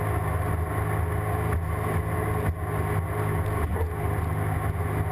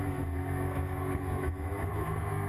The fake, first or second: second